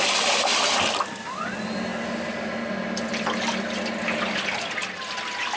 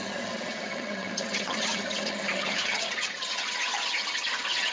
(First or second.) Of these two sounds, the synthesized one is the second